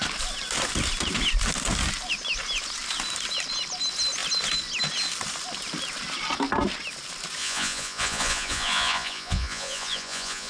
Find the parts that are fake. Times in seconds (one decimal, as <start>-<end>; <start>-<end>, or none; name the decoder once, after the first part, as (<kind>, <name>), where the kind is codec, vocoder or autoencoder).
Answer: 7.4-10.5 (vocoder, Vocos)